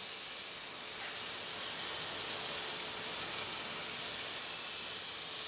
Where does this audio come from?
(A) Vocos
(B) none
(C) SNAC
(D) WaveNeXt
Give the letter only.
B